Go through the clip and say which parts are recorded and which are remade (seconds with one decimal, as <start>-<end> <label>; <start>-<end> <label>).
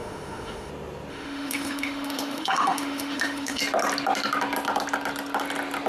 0.0-0.7 remade; 0.7-1.1 recorded; 1.1-3.6 remade; 3.6-5.9 recorded